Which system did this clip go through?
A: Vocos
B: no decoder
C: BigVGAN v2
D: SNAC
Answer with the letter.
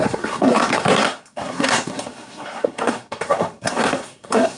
D